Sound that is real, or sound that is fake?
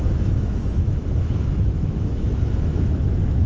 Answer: fake